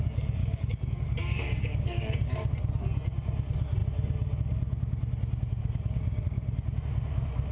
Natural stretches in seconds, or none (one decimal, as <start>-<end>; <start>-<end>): 0.0-0.4; 2.5-5.6; 6.2-7.5